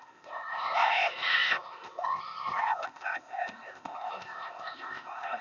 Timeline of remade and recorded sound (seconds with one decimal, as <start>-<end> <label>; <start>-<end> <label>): 0.0-5.4 remade